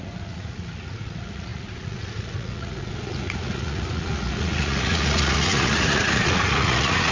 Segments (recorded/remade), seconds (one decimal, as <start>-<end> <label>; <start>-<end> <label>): 0.0-7.1 remade